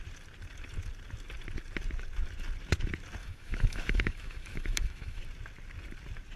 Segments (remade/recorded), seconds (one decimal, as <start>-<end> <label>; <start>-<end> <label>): 0.0-3.2 recorded; 3.2-5.2 remade; 5.2-6.4 recorded